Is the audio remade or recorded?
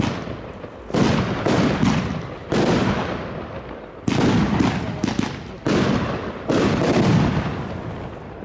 recorded